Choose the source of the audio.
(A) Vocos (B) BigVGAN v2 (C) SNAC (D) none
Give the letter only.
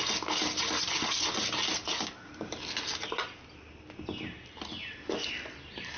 D